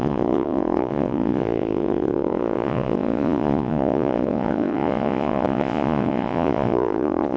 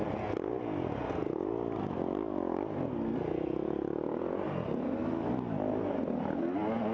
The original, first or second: second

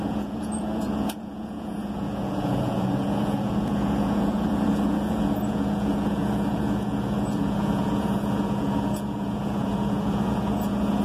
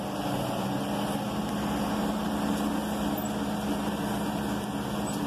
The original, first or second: second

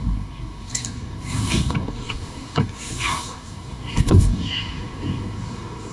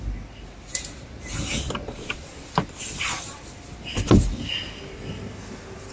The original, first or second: second